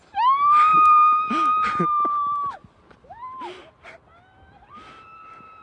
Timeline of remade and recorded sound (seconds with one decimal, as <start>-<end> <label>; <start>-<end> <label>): 0.0-5.6 recorded